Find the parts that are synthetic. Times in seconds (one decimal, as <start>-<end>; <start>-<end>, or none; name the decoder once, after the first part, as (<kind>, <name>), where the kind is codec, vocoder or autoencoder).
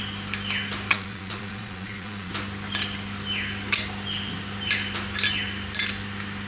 0.9-2.3 (vocoder, Vocos)